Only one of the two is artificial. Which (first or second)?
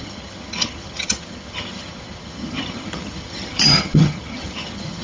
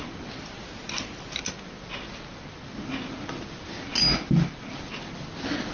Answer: first